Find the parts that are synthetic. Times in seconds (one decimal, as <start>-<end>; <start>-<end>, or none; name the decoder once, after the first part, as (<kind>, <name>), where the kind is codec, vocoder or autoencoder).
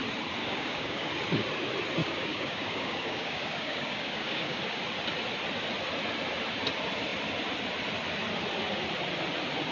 0.4-1.1 (codec, DAC); 2.0-4.6